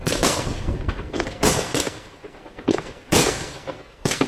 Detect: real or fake fake